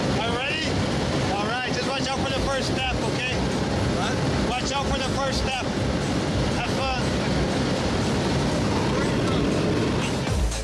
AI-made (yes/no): yes